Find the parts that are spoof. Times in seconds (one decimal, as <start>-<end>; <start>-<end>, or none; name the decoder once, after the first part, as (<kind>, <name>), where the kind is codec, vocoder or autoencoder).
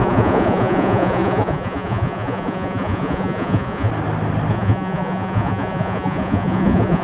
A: 0.0-3.9 (vocoder, Vocos); 4.5-7.0